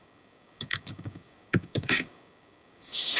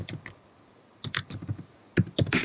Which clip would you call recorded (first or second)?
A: second